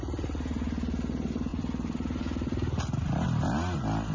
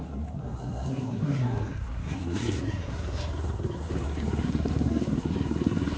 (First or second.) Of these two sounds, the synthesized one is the second